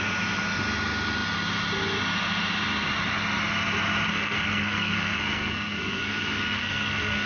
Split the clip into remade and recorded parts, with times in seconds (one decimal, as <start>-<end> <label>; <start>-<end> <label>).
0.0-4.1 recorded; 4.1-7.3 remade